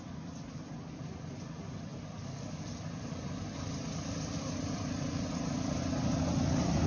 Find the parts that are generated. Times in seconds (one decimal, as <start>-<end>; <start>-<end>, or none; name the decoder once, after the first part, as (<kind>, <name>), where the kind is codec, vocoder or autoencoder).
none